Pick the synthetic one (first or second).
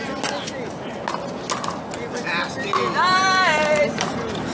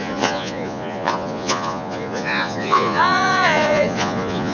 second